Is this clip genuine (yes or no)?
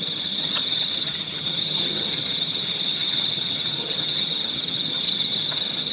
no